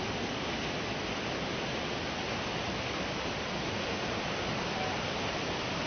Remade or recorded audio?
recorded